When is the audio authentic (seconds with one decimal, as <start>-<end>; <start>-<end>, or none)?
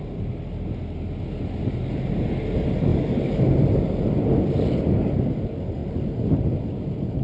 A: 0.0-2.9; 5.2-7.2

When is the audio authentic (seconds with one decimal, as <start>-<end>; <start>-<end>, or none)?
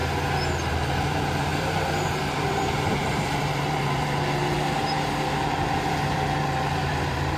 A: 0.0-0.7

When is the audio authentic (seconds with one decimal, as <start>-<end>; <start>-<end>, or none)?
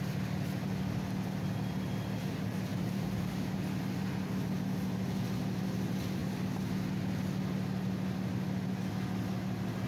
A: 0.0-2.7; 3.3-9.9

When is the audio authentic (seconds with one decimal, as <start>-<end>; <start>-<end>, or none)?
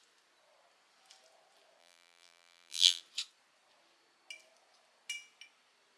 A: 0.0-1.8; 3.0-6.0